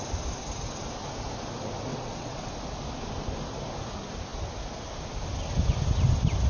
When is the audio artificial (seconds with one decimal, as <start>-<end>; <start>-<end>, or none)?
1.9-2.5